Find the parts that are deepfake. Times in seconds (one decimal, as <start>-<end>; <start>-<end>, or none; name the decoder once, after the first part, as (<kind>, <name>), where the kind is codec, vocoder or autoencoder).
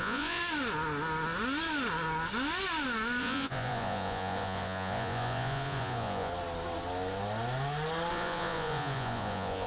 0.0-0.4 (vocoder, Vocos); 3.2-6.3; 8.1-9.7